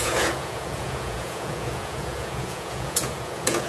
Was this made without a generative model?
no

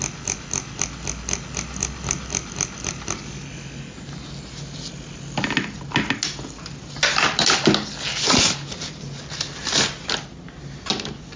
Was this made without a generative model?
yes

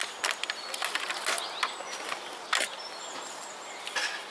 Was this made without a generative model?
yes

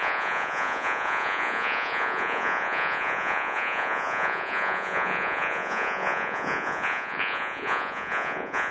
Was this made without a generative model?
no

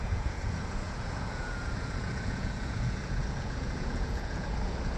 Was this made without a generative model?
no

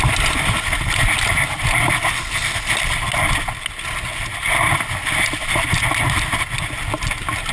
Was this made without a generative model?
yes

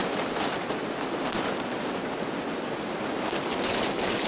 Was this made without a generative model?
yes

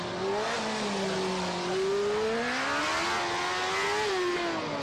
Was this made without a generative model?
yes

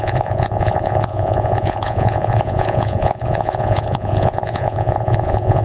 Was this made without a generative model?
no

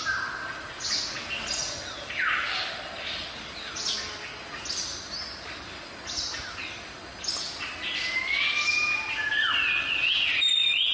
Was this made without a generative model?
yes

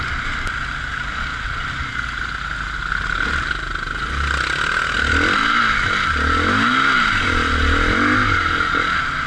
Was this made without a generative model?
yes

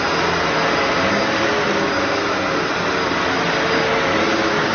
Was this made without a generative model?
yes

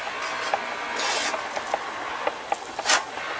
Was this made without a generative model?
yes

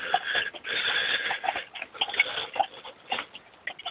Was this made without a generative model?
yes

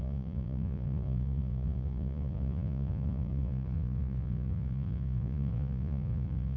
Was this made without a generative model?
no